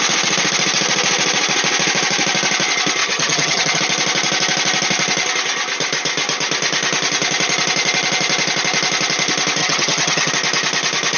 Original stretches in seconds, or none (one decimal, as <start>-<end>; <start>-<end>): 0.0-3.0; 3.8-9.6; 10.3-11.2